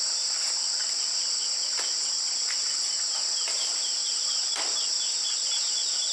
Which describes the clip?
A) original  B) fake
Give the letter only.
A